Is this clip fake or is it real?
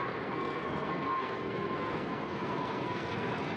fake